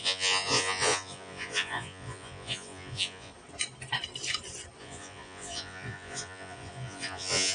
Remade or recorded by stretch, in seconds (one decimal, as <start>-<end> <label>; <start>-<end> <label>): 0.0-3.3 remade; 3.3-4.8 recorded; 4.8-7.5 remade